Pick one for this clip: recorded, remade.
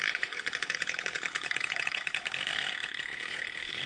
remade